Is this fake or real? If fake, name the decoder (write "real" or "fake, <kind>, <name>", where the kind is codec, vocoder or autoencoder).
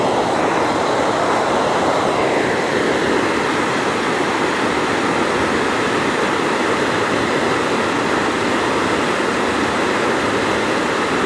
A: real